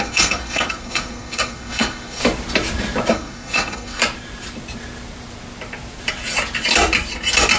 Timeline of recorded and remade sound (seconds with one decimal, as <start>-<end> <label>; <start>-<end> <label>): 0.0-2.2 remade; 2.2-3.1 recorded; 3.1-4.0 remade; 4.0-7.6 recorded